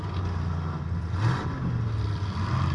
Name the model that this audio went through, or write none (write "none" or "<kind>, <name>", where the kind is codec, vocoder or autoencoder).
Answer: none